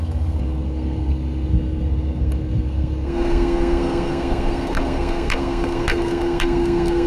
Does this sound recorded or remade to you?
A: remade